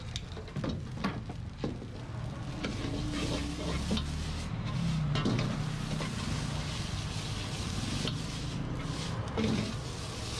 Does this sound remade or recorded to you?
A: recorded